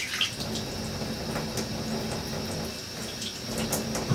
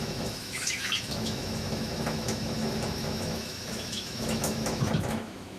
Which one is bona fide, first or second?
first